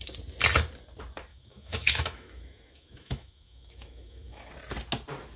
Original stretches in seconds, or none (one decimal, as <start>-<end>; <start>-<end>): 0.0-1.3; 4.5-5.4